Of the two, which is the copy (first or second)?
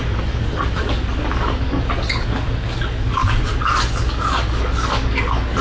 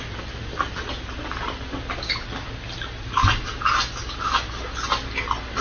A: first